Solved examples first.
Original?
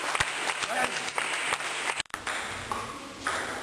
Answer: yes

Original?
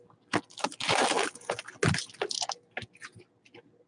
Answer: yes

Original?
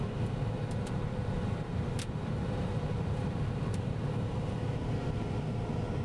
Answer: no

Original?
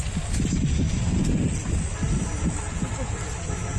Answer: yes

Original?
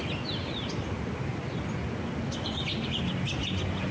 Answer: yes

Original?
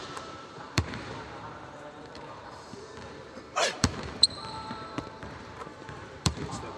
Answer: no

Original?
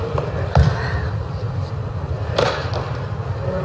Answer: no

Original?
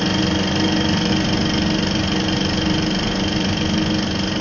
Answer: yes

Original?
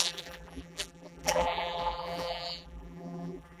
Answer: no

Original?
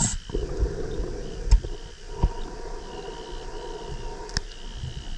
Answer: yes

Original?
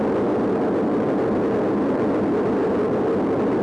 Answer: yes